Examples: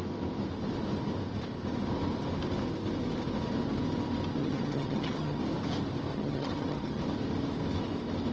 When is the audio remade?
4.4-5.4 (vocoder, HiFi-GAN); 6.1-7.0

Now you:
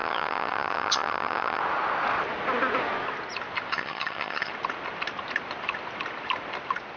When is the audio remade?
0.0-1.6 (vocoder, HiFi-GAN); 3.7-4.5

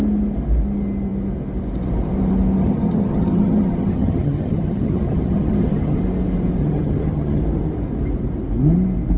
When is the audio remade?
2.6-6.0 (vocoder, HiFi-GAN); 6.6-7.4

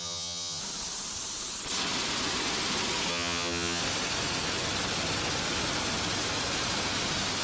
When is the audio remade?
0.0-0.6 (vocoder, HiFi-GAN); 3.1-3.8